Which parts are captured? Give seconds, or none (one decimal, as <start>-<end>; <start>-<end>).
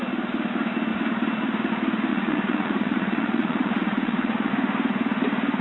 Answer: 0.0-2.1; 4.5-5.6